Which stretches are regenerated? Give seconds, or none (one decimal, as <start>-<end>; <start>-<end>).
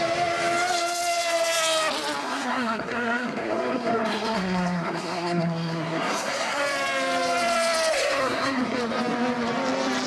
2.2-6.6; 7.9-8.8